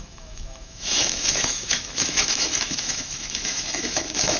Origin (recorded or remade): remade